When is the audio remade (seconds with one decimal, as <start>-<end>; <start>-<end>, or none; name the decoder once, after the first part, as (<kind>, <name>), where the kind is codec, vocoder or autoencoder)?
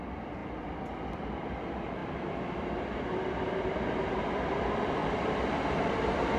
none